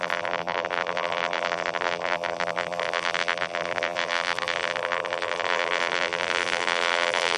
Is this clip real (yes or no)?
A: no